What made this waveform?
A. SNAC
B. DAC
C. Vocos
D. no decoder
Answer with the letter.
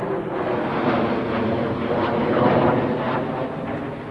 D